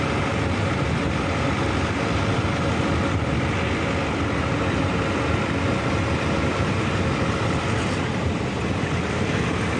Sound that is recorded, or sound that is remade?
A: recorded